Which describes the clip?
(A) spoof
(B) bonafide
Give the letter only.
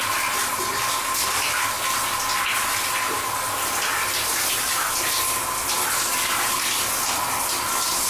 B